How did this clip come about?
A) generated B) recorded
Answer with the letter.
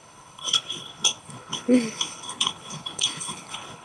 A